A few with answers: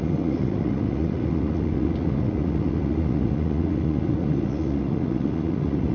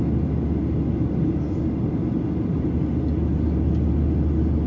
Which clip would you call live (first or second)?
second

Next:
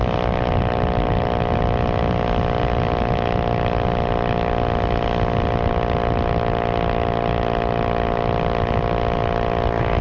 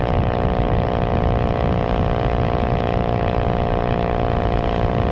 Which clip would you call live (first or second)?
first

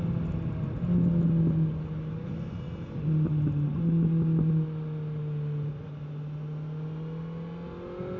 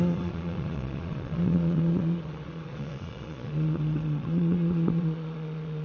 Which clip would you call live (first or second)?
first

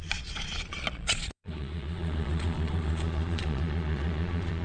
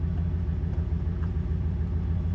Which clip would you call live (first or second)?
second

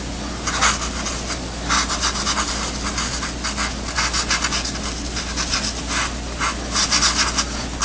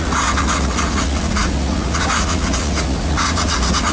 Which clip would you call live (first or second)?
first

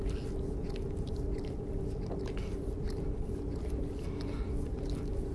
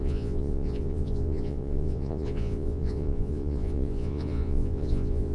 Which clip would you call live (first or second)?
first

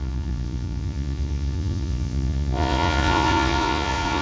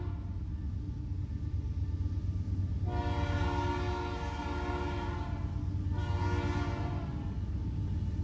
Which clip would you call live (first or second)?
second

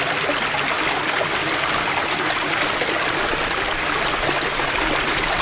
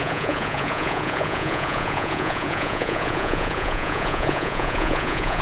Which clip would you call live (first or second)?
first